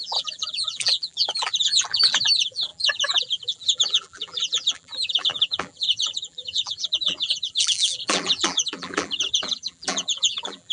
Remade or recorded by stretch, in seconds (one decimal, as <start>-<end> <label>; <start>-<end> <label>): 0.0-10.7 remade